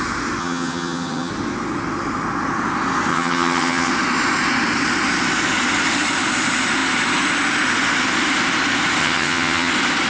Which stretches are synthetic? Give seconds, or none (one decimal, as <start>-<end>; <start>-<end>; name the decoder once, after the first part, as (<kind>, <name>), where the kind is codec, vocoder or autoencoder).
0.4-1.3 (vocoder, HiFi-GAN); 3.1-3.9; 9.0-9.7